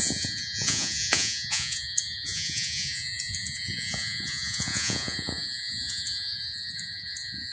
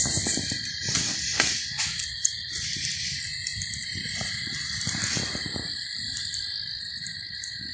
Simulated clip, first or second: first